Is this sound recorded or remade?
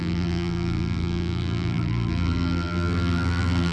remade